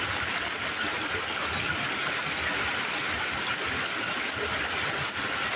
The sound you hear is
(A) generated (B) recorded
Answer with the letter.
B